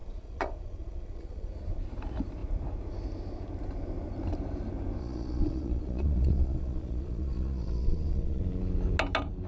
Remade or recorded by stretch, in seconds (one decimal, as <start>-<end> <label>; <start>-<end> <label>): 0.0-1.5 remade; 1.5-5.0 recorded; 5.0-8.4 remade; 8.4-9.5 recorded